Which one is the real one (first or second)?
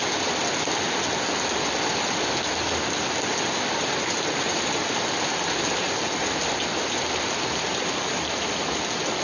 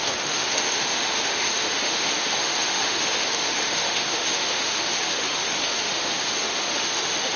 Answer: first